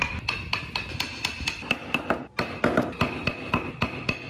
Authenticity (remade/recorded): recorded